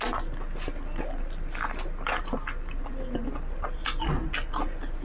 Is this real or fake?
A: real